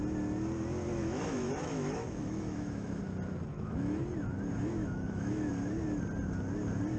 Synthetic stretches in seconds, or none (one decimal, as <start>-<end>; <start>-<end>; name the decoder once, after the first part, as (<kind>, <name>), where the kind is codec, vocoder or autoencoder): 1.0-3.0 (autoencoder, DAC-VAE); 3.5-4.0; 4.8-5.5